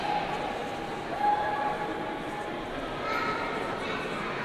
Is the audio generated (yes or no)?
no